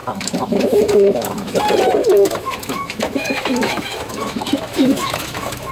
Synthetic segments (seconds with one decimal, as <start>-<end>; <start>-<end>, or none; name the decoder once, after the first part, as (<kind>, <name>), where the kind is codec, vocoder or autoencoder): 0.0-1.6 (autoencoder, DAC-VAE); 2.0-5.7